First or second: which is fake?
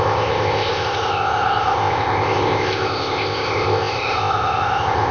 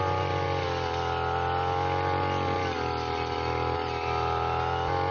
first